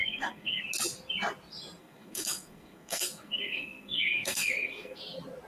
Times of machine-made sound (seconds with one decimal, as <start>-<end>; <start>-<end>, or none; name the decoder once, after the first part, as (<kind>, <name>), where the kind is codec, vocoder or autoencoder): 0.0-0.6 (codec, SNAC); 1.8-5.0